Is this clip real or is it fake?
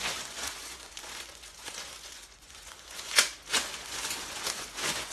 fake